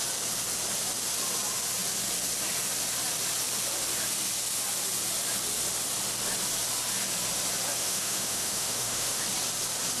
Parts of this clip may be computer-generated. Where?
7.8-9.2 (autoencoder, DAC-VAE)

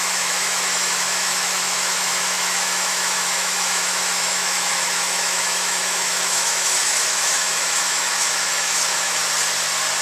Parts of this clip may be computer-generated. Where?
0.0-9.2 (autoencoder, DAC-VAE)

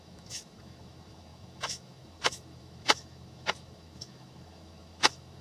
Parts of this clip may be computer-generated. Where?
0.0-5.4 (autoencoder, DAC-VAE)

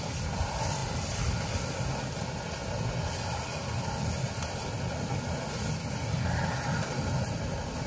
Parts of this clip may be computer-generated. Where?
none

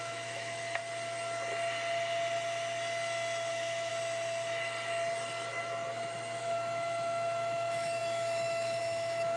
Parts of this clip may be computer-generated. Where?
0.0-0.8 (autoencoder, DAC-VAE); 3.5-3.9; 6.4-9.4

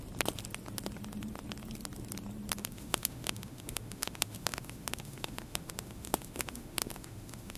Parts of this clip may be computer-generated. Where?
2.6-7.6 (autoencoder, DAC-VAE)

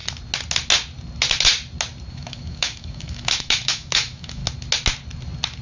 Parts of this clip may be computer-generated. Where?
2.1-4.4 (autoencoder, DAC-VAE)

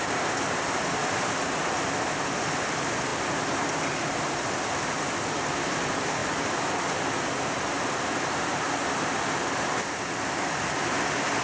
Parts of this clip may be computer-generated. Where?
none